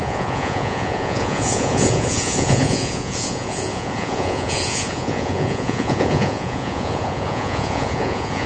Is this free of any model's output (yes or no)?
no